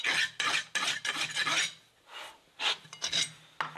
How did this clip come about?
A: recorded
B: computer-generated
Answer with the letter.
A